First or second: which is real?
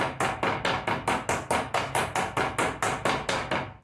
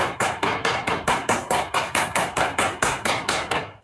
first